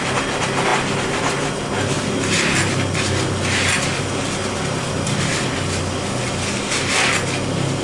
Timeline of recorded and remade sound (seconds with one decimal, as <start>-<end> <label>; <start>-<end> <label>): 0.0-7.8 recorded